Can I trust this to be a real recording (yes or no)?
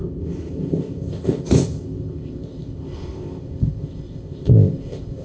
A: no